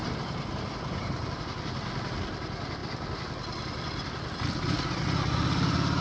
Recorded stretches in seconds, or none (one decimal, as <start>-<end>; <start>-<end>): 1.4-6.0